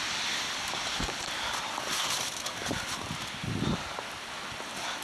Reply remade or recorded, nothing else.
recorded